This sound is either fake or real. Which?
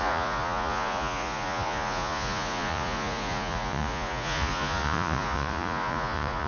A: fake